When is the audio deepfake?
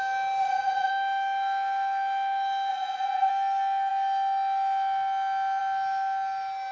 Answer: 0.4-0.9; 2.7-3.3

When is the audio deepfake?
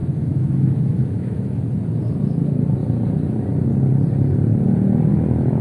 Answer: 0.0-1.6; 5.1-5.6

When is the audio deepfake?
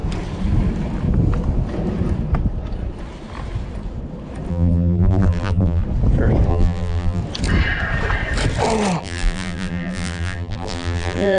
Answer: 4.5-5.8; 6.5-7.2; 9.0-11.4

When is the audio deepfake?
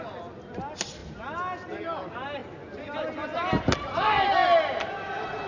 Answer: none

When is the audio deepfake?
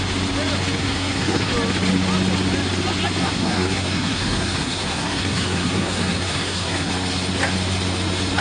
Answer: 0.8-1.5; 3.2-6.9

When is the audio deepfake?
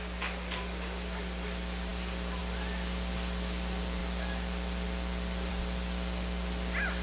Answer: none